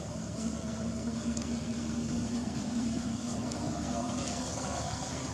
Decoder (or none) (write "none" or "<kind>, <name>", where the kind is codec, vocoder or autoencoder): codec, SNAC